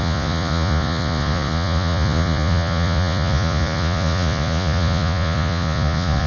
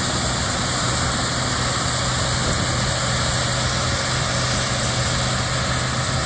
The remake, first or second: first